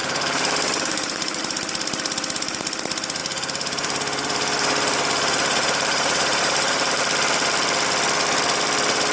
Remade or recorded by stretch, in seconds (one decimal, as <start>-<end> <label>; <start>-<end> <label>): 0.0-1.4 remade; 1.4-3.2 recorded; 3.2-7.0 remade; 7.0-9.1 recorded